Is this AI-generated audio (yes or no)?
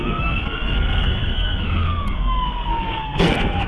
yes